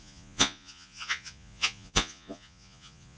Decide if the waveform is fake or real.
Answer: fake